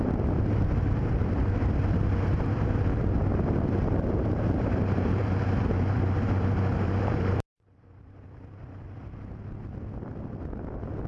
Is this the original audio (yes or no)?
no